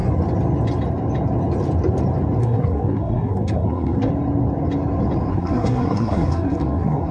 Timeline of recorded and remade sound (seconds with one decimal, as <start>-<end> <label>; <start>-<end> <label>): 0.0-2.4 recorded; 2.4-4.1 remade; 4.1-5.3 recorded; 5.3-7.1 remade